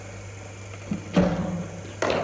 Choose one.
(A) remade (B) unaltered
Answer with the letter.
B